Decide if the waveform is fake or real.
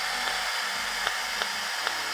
real